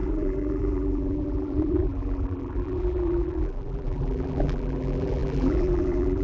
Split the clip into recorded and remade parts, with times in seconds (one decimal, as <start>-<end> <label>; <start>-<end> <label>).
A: 0.0-6.2 remade